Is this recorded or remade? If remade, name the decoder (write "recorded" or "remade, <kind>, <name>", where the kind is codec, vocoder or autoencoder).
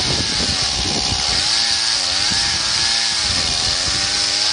recorded